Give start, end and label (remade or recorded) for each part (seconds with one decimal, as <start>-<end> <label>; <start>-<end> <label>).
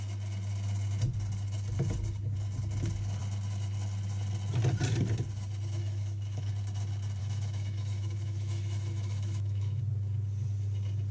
0.0-5.8 recorded; 5.8-6.5 remade; 6.5-7.2 recorded; 7.2-9.8 remade; 9.8-11.1 recorded